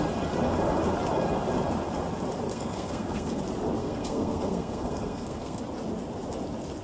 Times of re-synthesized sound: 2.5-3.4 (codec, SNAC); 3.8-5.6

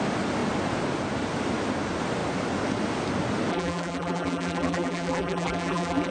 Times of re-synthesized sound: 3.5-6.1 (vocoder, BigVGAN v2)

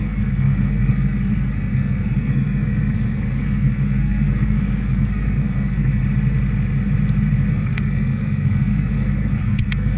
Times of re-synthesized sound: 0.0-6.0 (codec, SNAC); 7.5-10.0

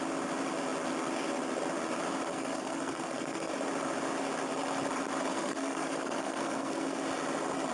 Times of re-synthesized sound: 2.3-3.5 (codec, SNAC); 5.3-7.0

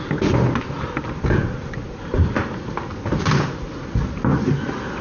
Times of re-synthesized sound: none

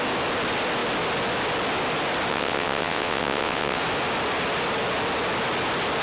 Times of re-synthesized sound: 2.3-3.8 (vocoder, WaveNeXt)